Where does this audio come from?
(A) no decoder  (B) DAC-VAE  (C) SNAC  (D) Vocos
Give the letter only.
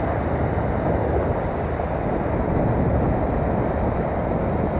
A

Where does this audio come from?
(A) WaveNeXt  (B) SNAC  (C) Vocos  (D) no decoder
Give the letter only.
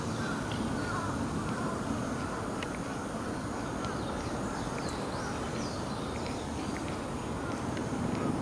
D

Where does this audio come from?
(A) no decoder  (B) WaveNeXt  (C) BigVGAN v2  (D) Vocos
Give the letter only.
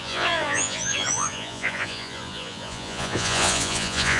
D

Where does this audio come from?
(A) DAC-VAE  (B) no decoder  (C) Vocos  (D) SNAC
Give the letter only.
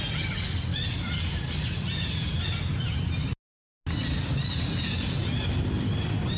B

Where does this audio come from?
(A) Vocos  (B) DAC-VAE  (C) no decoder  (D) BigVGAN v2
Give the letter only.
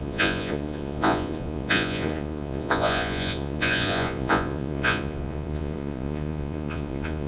A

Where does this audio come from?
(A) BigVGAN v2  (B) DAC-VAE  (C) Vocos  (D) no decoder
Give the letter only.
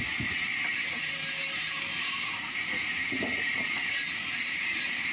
D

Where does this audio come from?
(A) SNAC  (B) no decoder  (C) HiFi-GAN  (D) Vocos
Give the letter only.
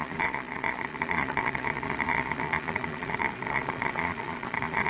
D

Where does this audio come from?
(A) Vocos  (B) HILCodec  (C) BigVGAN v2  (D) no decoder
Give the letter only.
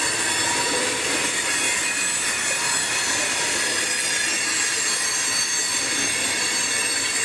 D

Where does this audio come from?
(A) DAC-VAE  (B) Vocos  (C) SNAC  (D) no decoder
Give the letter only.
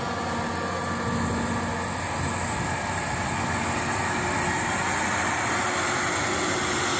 D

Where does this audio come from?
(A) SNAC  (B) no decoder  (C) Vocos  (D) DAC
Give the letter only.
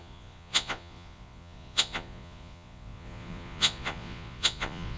C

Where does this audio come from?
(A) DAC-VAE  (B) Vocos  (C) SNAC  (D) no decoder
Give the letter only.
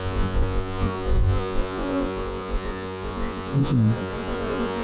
B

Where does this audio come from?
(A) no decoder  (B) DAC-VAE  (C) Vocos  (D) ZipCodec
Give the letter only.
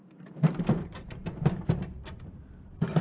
A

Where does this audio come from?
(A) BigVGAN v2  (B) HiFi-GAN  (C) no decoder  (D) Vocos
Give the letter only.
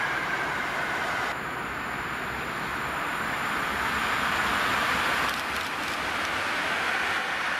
C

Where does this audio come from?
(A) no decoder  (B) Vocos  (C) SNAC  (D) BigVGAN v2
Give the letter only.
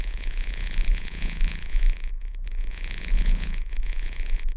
B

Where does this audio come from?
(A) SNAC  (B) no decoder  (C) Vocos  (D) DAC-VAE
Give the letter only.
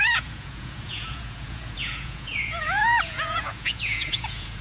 C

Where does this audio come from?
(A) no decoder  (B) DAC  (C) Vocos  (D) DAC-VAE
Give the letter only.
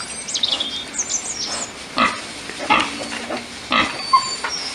A